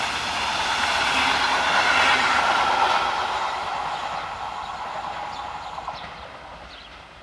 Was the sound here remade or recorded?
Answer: recorded